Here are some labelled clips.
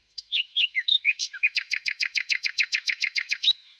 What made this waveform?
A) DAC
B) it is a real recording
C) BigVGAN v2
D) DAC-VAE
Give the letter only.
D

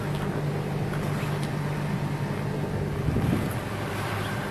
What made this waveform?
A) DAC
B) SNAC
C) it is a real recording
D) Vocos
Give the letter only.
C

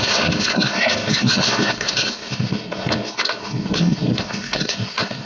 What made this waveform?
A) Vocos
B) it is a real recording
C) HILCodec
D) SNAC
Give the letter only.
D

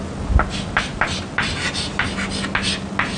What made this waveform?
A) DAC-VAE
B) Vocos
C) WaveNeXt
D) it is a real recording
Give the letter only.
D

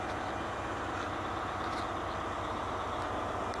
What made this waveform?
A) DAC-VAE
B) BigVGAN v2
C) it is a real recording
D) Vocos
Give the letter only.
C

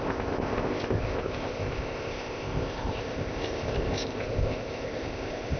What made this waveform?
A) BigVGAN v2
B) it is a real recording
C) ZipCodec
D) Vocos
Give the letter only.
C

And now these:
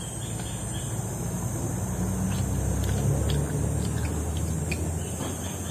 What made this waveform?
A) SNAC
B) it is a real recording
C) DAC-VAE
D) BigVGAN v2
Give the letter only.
B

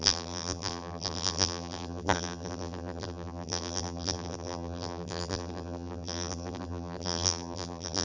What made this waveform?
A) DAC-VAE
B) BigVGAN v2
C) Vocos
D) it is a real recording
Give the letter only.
B